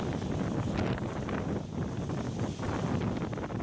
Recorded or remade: recorded